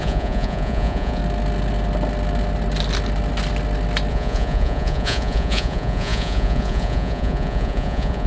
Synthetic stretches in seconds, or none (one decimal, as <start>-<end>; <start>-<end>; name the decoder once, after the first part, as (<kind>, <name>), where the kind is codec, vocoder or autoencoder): 0.0-1.2 (vocoder, Vocos); 4.1-8.3